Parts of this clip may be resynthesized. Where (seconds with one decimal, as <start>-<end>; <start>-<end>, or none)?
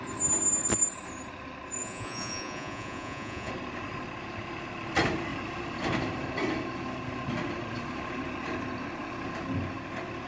1.8-3.5